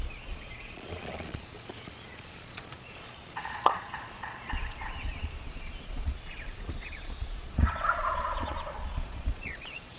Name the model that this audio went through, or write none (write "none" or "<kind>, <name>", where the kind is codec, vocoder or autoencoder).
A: vocoder, Vocos